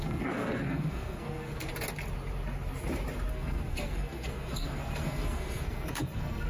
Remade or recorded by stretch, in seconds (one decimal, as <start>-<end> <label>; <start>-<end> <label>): 0.0-1.7 remade; 1.7-3.3 recorded; 3.3-6.5 remade